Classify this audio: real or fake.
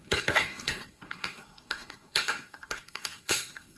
fake